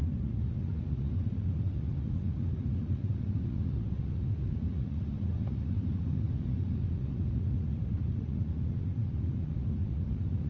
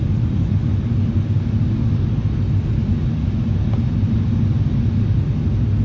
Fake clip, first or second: first